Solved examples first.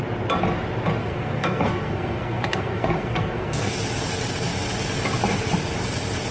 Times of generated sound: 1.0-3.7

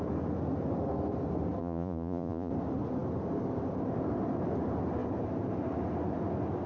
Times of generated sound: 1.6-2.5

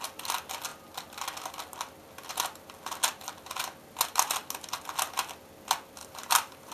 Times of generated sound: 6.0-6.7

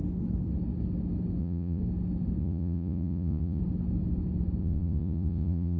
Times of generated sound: 1.4-1.8; 2.4-3.6; 4.6-5.8